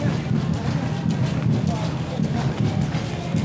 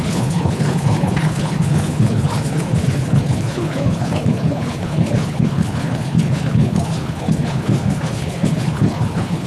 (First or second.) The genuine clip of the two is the first